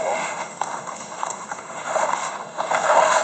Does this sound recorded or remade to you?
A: remade